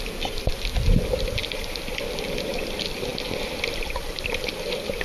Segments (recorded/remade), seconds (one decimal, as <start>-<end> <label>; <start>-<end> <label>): 0.0-3.1 recorded; 3.1-4.1 remade; 4.1-5.0 recorded